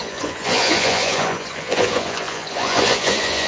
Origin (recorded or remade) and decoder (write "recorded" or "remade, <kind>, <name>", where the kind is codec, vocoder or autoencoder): remade, vocoder, Vocos